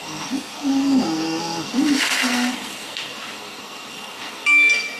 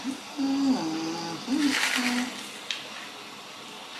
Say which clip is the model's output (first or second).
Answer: first